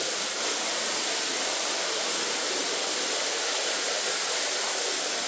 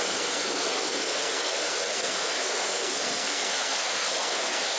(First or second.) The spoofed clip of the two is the second